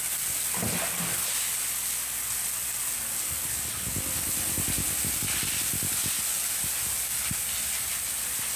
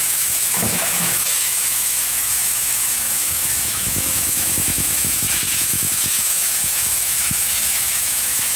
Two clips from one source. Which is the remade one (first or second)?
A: second